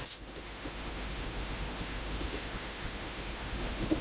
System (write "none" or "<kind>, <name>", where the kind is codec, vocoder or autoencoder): autoencoder, DAC-VAE